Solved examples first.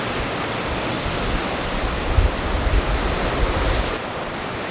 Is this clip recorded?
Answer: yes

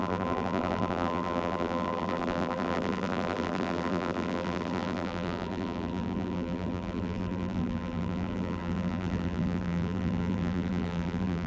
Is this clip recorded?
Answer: no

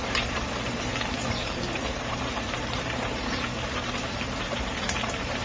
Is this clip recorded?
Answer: no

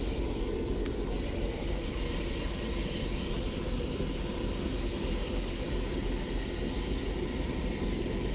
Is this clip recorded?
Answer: yes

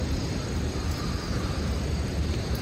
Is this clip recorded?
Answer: no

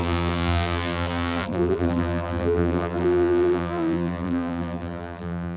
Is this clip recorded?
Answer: no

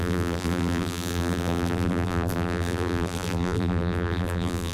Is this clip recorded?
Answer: no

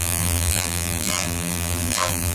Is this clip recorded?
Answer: no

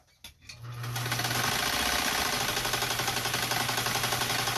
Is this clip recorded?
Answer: yes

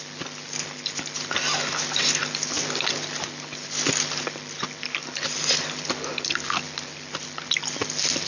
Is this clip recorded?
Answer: yes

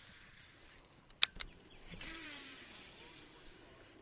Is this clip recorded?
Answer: no